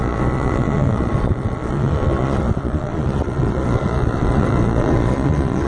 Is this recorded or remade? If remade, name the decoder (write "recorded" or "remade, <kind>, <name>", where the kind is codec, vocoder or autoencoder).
remade, vocoder, Vocos